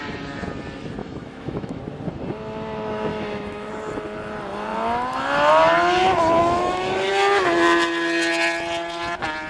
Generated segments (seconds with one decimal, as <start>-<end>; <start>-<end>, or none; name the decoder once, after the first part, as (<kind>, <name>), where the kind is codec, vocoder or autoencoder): 1.0-1.8 (autoencoder, DAC-VAE); 3.1-3.7; 6.4-7.1